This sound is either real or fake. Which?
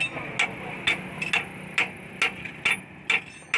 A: real